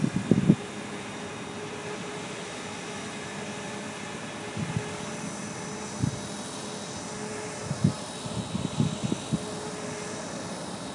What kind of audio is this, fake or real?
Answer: real